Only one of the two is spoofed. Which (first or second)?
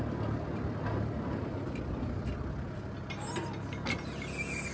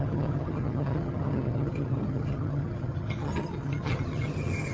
second